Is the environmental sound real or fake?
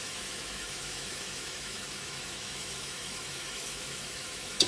fake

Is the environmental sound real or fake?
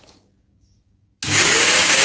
fake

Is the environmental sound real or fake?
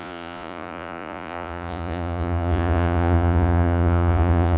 fake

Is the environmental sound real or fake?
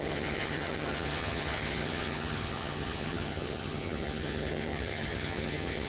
fake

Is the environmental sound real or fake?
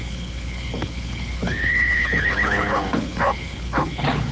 fake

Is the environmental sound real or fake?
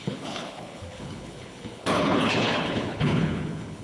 fake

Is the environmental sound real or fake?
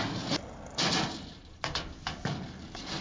real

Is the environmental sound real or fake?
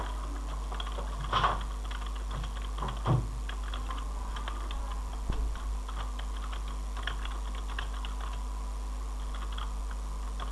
real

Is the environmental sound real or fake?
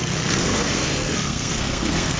fake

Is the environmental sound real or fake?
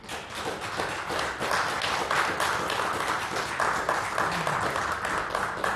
real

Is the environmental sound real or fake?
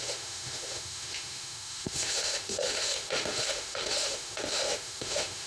fake